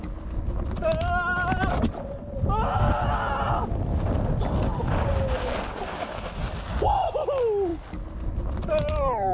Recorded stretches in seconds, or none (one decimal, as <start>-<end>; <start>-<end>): 0.0-9.3